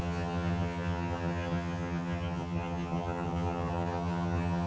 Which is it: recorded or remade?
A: remade